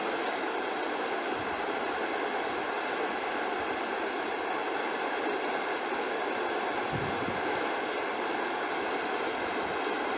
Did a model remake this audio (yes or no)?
no